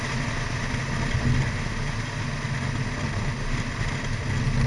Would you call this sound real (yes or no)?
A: yes